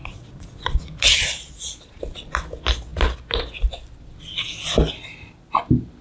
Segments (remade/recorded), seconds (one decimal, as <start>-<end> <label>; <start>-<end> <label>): 0.0-2.0 remade; 2.0-6.0 recorded